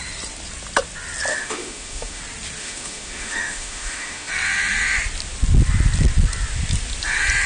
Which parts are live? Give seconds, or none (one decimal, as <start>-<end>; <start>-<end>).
0.0-1.3; 2.2-2.6; 4.3-7.5